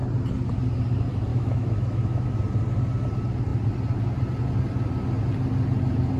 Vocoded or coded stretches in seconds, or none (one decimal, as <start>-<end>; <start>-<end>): 1.3-2.3